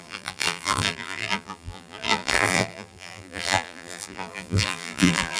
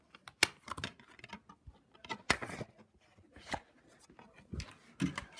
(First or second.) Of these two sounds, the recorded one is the second